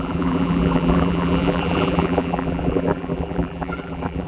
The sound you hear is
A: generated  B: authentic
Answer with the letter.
A